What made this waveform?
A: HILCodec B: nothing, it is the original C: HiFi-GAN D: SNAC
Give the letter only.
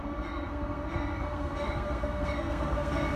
D